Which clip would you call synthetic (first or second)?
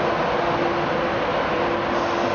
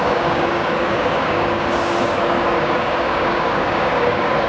second